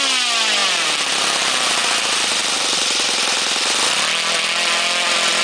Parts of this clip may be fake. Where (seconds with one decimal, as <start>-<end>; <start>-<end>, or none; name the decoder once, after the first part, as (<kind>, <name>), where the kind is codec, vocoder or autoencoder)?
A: none